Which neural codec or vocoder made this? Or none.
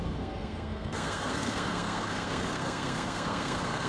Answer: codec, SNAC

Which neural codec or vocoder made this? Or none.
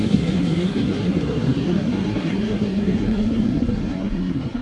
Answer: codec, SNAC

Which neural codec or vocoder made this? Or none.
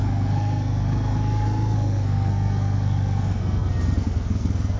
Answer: codec, SNAC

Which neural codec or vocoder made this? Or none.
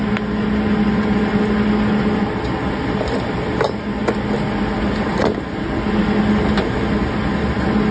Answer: none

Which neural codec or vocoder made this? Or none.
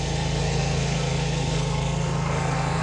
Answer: codec, SNAC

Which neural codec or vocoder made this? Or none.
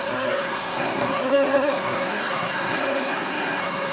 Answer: codec, SNAC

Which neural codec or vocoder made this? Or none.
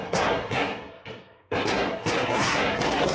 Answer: codec, SNAC